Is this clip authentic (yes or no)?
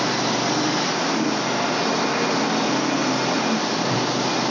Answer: yes